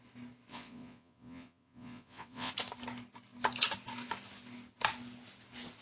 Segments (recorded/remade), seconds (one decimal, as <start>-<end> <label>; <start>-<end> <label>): 0.0-0.5 recorded; 0.5-2.5 remade; 2.5-5.8 recorded

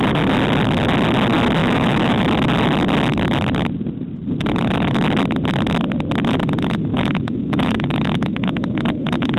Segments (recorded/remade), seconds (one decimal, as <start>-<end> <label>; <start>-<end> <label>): 0.0-1.6 recorded; 1.6-2.2 remade; 2.2-6.9 recorded; 6.9-9.4 remade